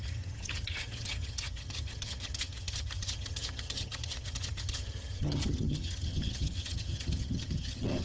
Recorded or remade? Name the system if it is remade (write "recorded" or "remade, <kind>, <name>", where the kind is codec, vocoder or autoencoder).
remade, vocoder, HiFi-GAN